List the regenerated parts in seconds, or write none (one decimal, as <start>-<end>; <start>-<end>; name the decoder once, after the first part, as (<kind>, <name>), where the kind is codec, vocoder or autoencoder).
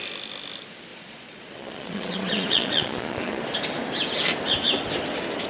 0.9-3.4 (vocoder, Vocos)